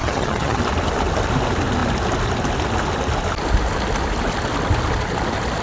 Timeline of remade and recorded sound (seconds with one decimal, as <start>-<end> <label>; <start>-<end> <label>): 0.0-0.6 remade; 0.6-5.6 recorded